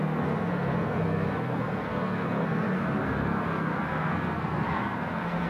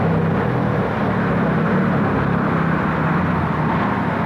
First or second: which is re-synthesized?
first